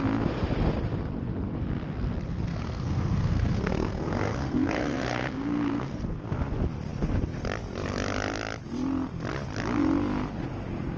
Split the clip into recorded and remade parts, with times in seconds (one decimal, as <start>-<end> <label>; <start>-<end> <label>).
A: 0.0-2.5 recorded; 2.5-6.0 remade; 6.0-11.0 recorded